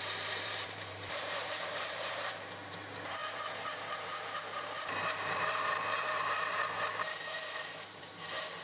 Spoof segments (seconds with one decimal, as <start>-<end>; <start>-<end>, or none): 0.0-8.6